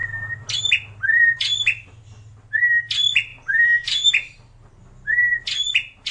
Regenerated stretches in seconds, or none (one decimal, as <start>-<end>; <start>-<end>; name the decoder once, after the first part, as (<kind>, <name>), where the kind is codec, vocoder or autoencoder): 3.3-4.7 (vocoder, BigVGAN v2)